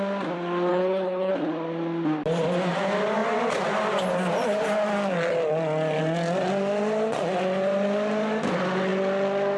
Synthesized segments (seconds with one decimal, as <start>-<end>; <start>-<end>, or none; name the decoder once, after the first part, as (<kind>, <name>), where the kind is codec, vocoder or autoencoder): 0.7-1.3 (codec, HILCodec)